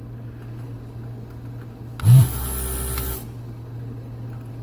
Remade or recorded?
recorded